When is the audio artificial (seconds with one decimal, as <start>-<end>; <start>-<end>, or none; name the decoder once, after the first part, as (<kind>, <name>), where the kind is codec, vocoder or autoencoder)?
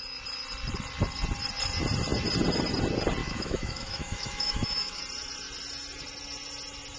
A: 3.2-5.0 (autoencoder, DAC-VAE)